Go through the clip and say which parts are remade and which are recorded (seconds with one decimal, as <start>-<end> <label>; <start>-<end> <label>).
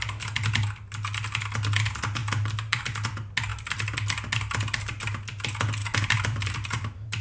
0.0-2.2 recorded; 2.2-2.8 remade; 2.8-5.8 recorded; 5.8-7.2 remade